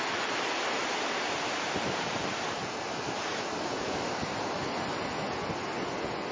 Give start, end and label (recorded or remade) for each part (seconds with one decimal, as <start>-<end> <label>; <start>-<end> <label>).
0.0-0.8 recorded; 0.8-4.6 remade; 4.6-6.3 recorded